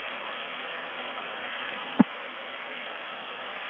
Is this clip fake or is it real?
fake